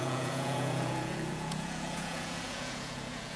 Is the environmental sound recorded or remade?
remade